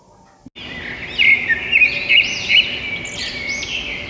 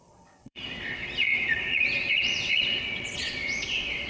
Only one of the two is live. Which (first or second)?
first